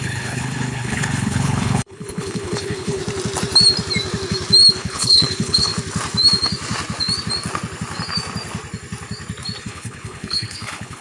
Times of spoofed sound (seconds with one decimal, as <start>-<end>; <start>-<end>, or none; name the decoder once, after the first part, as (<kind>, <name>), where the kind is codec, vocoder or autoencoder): 0.0-3.0 (codec, HILCodec); 4.7-5.7; 9.6-11.0